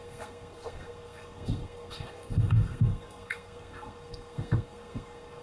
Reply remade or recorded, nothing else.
remade